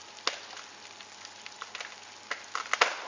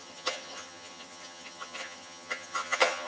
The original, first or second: first